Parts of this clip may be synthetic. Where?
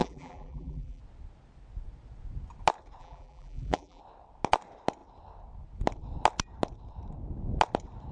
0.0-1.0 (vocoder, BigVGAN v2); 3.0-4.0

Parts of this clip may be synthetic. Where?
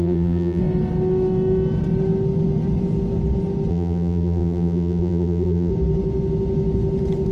0.0-0.6 (vocoder, BigVGAN v2); 3.7-5.7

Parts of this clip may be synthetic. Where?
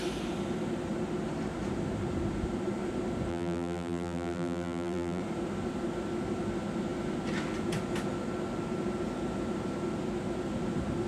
3.3-5.2 (vocoder, BigVGAN v2)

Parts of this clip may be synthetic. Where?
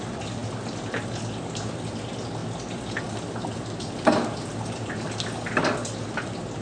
none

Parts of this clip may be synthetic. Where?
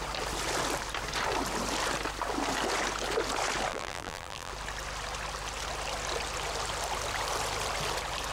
3.7-4.5 (vocoder, BigVGAN v2)